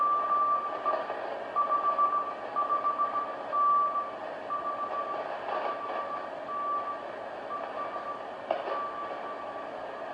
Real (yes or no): yes